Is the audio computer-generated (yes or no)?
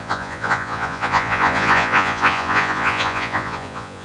yes